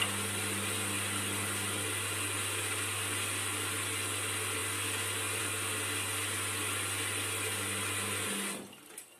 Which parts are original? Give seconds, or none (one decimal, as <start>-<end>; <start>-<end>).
0.0-9.2

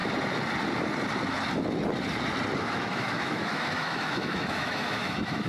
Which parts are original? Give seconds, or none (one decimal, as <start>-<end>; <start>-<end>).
0.0-2.6